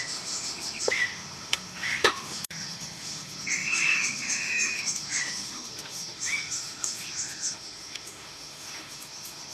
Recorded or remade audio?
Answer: remade